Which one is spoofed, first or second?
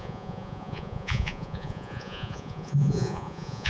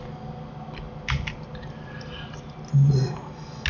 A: first